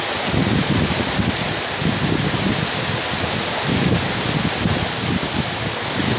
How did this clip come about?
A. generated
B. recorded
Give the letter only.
B